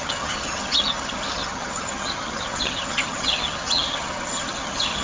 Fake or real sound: fake